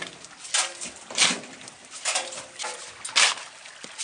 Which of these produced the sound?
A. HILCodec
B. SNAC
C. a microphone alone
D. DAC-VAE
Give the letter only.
C